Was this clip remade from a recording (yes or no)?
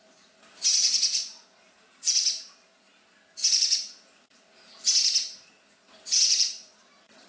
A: yes